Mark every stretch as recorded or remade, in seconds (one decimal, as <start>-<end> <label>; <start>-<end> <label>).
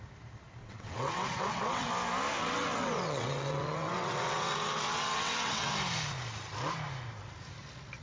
0.0-0.6 recorded; 0.6-1.9 remade; 1.9-2.4 recorded; 2.4-5.7 remade; 5.7-8.0 recorded